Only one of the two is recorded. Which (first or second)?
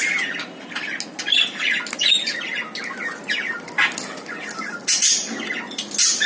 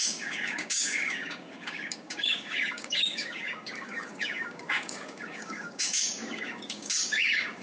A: first